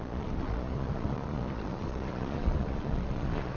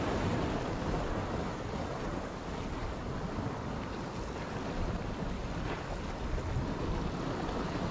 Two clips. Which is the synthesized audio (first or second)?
first